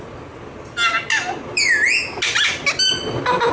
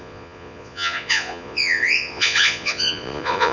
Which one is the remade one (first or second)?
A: second